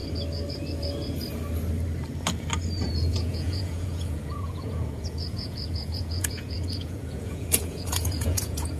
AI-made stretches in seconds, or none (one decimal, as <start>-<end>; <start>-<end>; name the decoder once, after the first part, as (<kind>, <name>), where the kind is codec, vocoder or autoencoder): 2.9-8.8 (vocoder, Vocos)

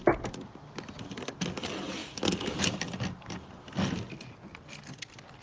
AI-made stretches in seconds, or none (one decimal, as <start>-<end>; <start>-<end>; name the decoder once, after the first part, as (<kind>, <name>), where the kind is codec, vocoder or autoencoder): none

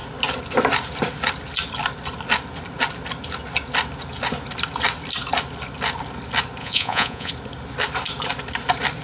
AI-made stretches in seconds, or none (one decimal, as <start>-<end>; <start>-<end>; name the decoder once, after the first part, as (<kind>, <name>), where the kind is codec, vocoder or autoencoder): 6.6-7.3 (vocoder, Vocos)

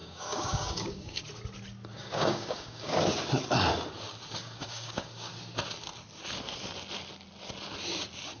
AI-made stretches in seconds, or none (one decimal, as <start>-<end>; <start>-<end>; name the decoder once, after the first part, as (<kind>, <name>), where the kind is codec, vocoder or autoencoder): 0.0-1.2 (codec, DAC); 1.9-3.1; 4.4-5.3